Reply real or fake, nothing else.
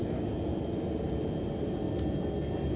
real